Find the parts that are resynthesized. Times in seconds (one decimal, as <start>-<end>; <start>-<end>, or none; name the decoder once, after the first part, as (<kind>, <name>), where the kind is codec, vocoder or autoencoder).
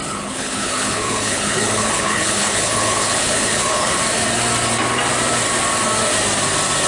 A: 0.0-4.0 (codec, HILCodec)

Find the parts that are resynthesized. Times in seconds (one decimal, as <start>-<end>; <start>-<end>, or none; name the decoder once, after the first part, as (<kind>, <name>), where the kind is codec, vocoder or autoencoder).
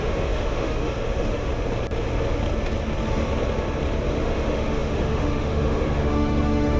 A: 0.0-1.5 (autoencoder, DAC-VAE); 4.2-6.8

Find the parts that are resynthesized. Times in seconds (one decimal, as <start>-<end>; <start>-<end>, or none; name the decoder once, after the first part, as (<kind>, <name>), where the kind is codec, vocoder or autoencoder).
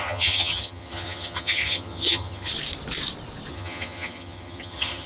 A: 0.0-2.5 (vocoder, HiFi-GAN); 3.5-5.1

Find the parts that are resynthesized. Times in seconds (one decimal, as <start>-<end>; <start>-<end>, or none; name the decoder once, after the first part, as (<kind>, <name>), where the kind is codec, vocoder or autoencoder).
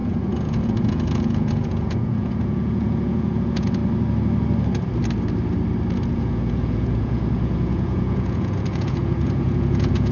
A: 0.0-3.8 (vocoder, Vocos); 6.1-10.1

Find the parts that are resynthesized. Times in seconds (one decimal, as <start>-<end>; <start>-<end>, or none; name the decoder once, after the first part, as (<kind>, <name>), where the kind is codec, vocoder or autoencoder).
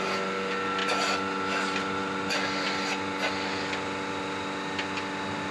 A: none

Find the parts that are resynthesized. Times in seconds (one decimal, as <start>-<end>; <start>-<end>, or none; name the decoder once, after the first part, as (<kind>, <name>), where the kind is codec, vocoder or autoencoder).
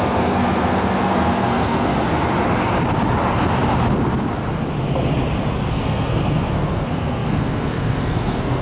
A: 0.0-1.9 (codec, SNAC); 5.7-8.6